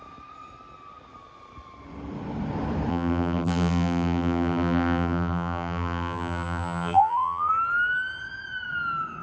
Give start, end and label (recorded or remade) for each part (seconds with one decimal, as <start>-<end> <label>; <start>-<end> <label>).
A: 0.0-2.9 recorded; 2.9-7.5 remade; 7.5-9.2 recorded